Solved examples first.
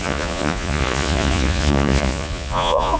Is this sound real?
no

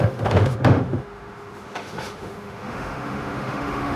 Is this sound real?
no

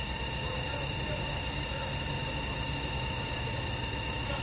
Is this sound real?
yes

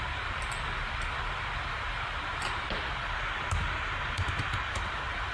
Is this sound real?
yes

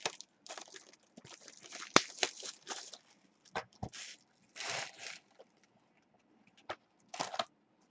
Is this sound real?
yes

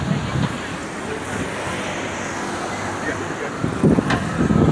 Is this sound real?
yes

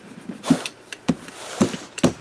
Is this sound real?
yes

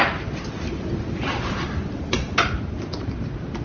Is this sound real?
yes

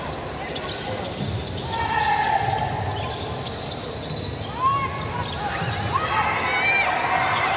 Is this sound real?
yes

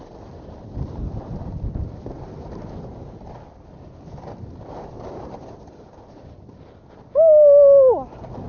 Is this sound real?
yes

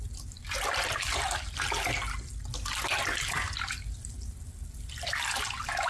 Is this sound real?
yes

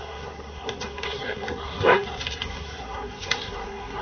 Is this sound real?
no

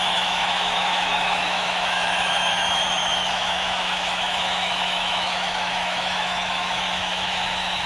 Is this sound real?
no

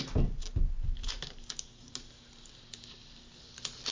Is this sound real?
yes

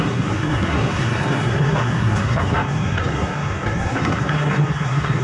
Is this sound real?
no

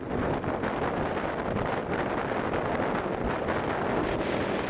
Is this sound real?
yes